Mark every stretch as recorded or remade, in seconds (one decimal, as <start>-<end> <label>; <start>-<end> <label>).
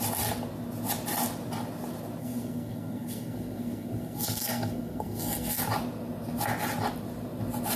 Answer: 0.0-2.2 recorded; 2.2-5.6 remade; 5.6-7.8 recorded